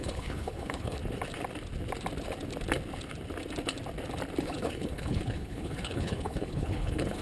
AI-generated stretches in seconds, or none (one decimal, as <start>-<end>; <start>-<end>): 0.0-1.0; 4.4-7.2